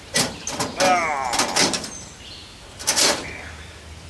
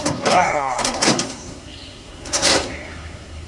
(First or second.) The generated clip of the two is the second